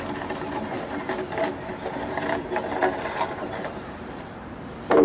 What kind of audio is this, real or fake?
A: fake